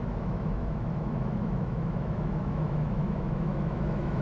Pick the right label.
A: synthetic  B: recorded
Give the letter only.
A